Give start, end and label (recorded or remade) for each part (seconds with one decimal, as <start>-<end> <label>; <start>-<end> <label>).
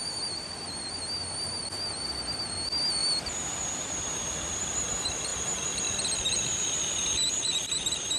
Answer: 0.0-8.2 recorded